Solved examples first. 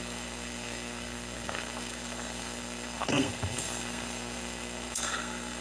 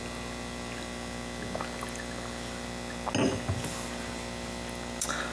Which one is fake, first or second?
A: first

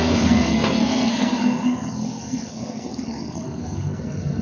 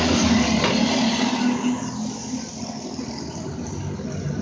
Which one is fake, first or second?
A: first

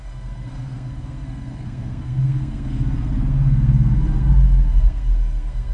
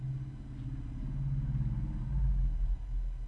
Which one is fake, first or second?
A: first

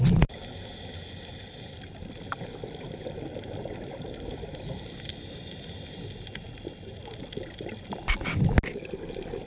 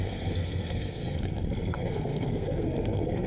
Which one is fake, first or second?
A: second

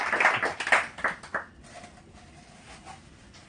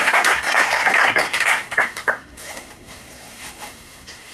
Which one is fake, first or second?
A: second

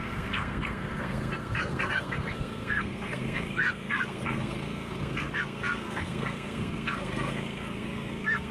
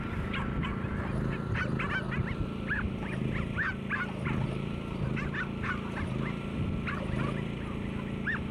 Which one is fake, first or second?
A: first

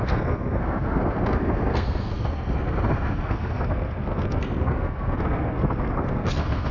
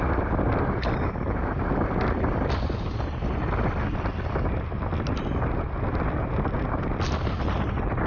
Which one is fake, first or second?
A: first